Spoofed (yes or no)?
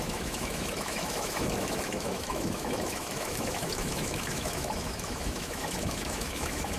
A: yes